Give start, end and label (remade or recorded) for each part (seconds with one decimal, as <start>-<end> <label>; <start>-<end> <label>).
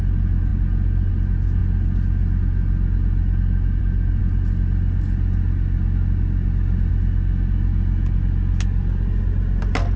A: 0.0-10.0 recorded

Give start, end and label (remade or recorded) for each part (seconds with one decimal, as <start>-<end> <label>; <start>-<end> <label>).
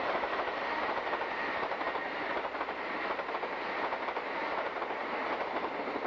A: 0.0-6.1 recorded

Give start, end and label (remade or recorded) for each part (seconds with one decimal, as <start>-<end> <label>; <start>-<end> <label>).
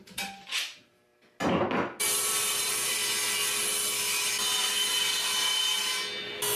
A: 0.0-1.1 remade; 1.1-2.0 recorded; 2.0-3.0 remade; 3.0-6.6 recorded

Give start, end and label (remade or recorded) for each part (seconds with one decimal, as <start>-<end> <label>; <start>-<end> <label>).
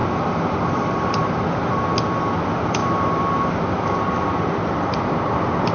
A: 0.0-1.8 remade; 1.8-2.8 recorded; 2.8-3.6 remade; 3.6-5.7 recorded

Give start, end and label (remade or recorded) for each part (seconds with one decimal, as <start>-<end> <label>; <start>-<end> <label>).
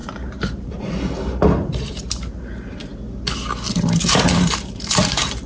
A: 0.0-2.9 remade; 2.9-3.7 recorded; 3.7-5.5 remade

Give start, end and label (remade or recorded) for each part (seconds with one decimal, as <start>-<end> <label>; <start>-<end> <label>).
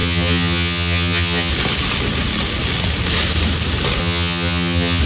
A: 0.0-1.5 remade; 1.5-4.0 recorded; 4.0-5.0 remade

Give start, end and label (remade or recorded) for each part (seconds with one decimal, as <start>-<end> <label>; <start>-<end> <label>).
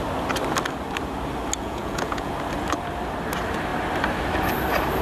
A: 0.0-1.6 recorded; 1.6-2.3 remade; 2.3-5.0 recorded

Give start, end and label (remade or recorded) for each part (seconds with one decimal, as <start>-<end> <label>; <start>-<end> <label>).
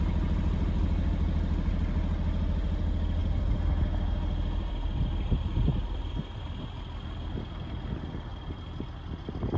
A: 0.0-9.6 recorded